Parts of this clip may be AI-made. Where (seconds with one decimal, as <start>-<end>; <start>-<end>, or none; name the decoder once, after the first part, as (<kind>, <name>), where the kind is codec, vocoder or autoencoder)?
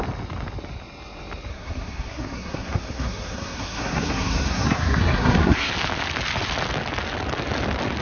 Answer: 1.5-5.7 (codec, SNAC)